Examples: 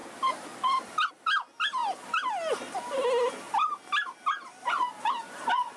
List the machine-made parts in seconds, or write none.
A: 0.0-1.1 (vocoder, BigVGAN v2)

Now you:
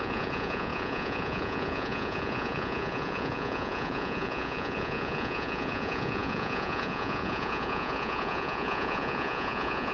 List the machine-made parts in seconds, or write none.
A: 0.0-9.9 (vocoder, Vocos)

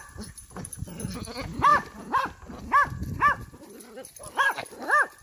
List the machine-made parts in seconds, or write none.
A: none

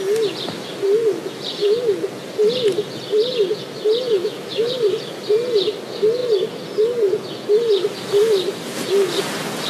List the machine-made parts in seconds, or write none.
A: 4.2-4.7 (autoencoder, DAC-VAE)

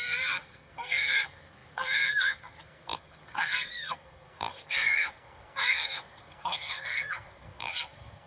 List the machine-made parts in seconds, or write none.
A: 0.0-8.3 (codec, SNAC)

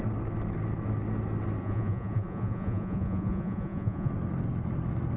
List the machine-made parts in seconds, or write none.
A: 1.6-4.1 (vocoder, Vocos)